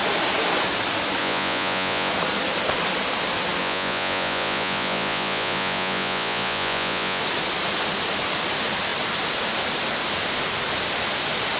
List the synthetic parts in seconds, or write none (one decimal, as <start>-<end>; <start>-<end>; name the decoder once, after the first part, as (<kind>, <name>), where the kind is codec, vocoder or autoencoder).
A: 1.2-2.1 (vocoder, Vocos); 3.6-7.2